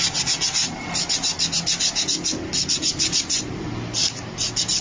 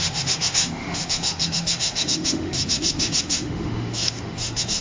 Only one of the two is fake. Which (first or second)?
second